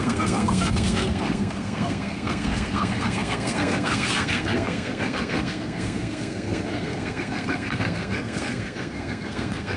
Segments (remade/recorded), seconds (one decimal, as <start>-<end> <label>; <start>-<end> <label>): 0.0-9.8 remade